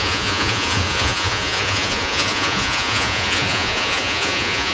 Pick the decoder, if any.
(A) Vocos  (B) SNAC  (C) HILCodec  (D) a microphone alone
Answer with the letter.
A